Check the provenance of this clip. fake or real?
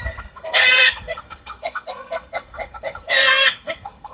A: fake